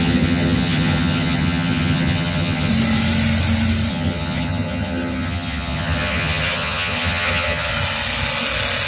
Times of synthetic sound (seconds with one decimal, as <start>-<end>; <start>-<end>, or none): 0.0-2.7; 3.9-7.7